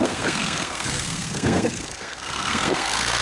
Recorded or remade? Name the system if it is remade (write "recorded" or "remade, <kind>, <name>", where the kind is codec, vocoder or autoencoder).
remade, codec, SNAC